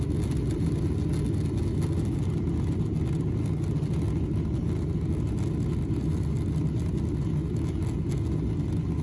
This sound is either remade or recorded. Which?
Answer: recorded